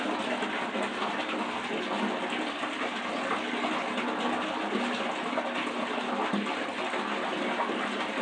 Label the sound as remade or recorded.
recorded